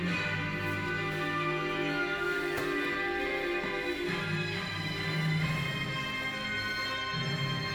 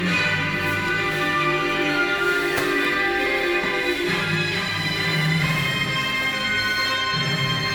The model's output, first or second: second